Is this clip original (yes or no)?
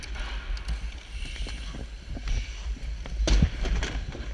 yes